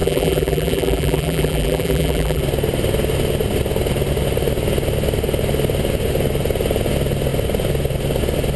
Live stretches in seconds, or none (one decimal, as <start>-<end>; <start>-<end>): 2.4-8.6